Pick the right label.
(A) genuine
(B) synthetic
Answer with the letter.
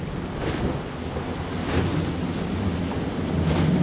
A